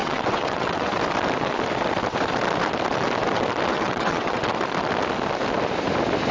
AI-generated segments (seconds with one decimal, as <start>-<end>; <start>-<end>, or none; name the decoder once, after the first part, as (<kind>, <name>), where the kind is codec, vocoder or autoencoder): 0.0-0.9 (vocoder, WaveNeXt); 3.7-4.4